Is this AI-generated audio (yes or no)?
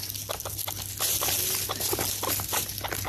no